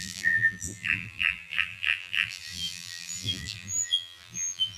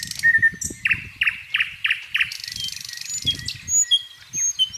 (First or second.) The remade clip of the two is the first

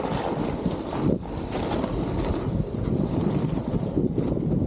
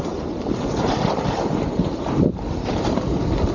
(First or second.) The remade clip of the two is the second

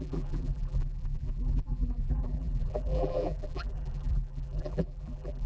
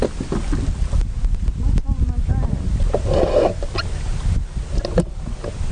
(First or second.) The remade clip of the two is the first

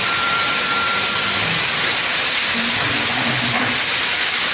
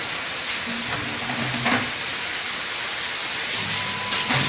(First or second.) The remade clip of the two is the first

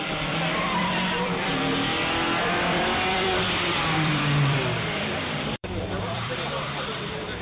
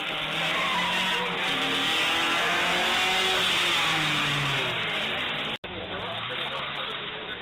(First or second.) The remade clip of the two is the first